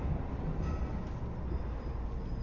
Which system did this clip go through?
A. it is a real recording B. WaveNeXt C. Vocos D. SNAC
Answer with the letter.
A